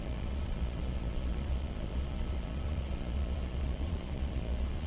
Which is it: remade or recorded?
remade